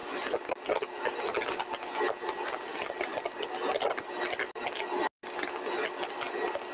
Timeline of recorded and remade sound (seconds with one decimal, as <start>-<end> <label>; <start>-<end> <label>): 0.0-6.7 recorded